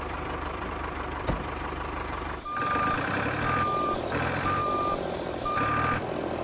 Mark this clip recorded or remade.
remade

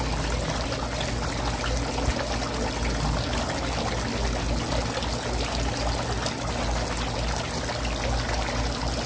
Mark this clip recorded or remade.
recorded